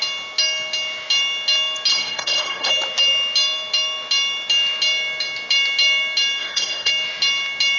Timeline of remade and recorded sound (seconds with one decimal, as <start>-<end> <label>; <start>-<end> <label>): 0.0-1.9 recorded; 1.9-2.7 remade; 2.7-6.4 recorded; 6.4-6.9 remade; 6.9-7.8 recorded